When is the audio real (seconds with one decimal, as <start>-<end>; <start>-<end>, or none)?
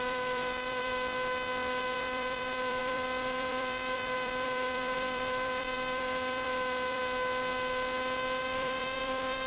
0.9-1.8; 7.0-8.4